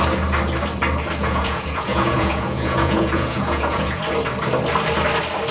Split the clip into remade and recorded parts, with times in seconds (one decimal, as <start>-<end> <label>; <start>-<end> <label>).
0.0-1.2 recorded; 1.2-4.0 remade; 4.0-5.5 recorded